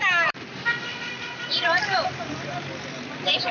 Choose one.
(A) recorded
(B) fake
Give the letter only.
B